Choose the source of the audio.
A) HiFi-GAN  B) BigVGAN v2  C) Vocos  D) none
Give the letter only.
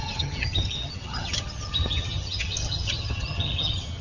A